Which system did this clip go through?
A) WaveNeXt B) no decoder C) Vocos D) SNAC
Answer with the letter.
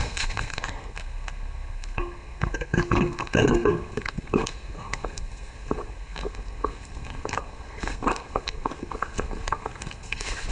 D